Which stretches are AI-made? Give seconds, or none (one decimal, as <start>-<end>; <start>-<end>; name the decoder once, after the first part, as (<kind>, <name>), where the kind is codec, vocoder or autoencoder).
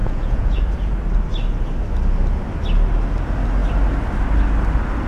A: 0.0-0.6 (vocoder, Vocos)